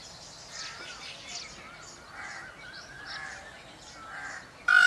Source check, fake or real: real